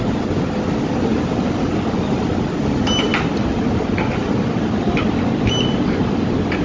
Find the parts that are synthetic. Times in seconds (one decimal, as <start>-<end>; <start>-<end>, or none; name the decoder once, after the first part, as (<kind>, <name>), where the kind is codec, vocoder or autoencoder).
none